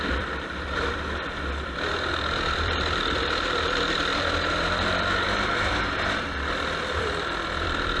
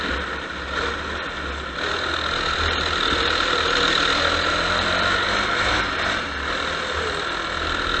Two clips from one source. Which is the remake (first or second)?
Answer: first